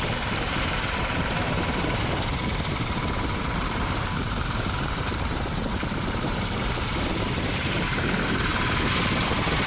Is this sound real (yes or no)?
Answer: no